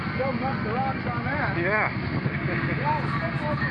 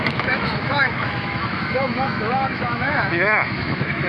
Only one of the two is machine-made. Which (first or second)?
second